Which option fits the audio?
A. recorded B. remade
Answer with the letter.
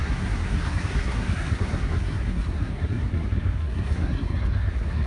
B